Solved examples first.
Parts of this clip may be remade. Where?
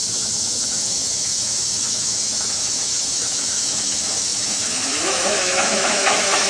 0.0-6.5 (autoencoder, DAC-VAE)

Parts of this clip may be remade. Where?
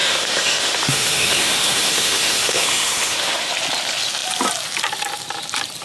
0.0-3.5 (autoencoder, DAC-VAE)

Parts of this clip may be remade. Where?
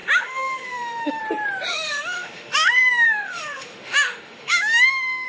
0.0-1.2 (autoencoder, DAC-VAE); 1.7-5.3